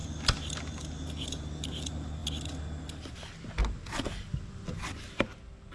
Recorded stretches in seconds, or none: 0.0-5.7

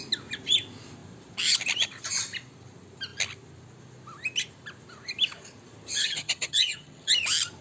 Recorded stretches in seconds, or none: 0.0-6.0; 7.1-7.6

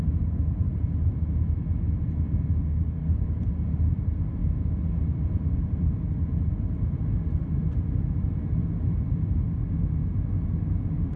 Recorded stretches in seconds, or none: 0.0-3.0; 3.5-11.2